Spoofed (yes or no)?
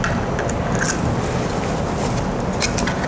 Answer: no